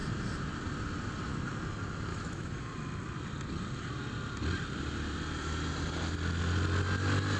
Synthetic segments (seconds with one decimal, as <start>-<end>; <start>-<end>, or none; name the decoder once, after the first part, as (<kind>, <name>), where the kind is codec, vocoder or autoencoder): 2.1-2.6 (autoencoder, DAC-VAE)